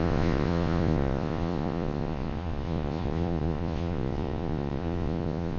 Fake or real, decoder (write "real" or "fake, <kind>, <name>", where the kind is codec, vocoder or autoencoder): fake, vocoder, Vocos